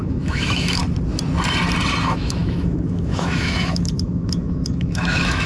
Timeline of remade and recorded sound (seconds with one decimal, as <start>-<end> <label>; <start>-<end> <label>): 0.0-0.8 remade; 0.8-2.0 recorded; 2.0-5.5 remade